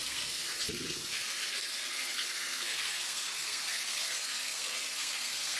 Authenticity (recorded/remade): remade